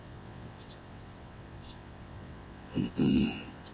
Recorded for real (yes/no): no